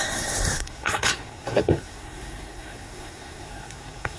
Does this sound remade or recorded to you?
remade